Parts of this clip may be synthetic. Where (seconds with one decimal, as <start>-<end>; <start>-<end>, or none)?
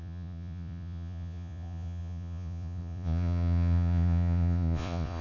0.0-5.2